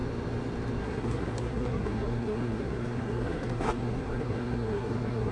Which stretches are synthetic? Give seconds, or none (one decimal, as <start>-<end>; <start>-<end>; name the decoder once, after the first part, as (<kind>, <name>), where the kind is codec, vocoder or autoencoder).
0.8-5.3 (codec, SNAC)